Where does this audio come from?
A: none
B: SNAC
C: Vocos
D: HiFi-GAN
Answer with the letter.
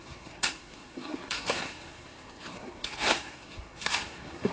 B